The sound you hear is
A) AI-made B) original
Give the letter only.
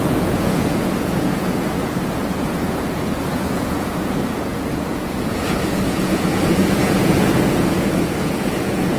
A